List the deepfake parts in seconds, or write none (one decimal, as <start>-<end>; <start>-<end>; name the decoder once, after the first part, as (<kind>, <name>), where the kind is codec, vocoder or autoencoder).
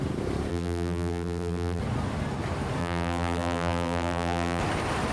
0.5-1.8 (vocoder, BigVGAN v2); 2.8-4.6